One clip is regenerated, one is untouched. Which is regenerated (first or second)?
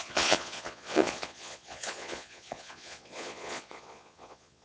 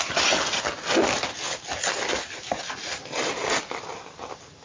first